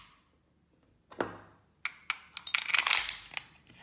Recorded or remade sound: recorded